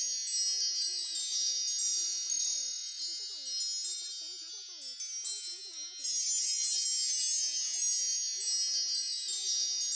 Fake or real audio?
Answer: real